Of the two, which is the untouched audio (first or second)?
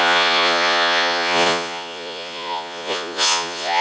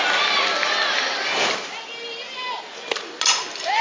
second